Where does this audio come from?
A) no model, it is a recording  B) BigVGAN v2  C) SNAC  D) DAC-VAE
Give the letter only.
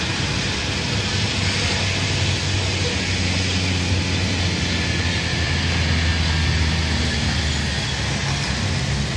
A